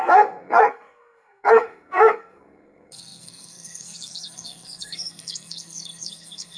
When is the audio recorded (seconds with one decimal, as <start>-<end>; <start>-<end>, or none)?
none